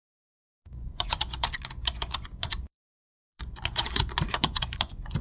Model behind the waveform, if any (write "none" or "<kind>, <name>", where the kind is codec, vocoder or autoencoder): vocoder, Vocos